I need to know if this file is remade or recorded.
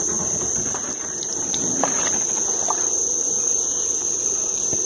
recorded